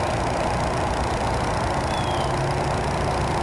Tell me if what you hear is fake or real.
real